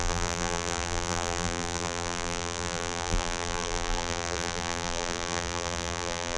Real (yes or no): no